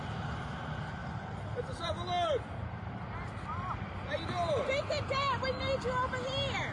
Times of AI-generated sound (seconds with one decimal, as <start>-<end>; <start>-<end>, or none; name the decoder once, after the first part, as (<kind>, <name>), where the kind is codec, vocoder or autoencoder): none